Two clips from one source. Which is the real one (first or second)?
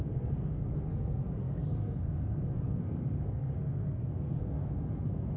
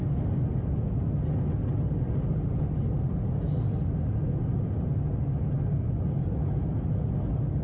second